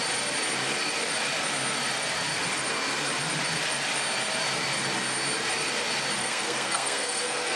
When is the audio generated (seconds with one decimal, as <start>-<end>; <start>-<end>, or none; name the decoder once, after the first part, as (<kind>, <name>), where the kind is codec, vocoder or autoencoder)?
6.2-7.6 (codec, SNAC)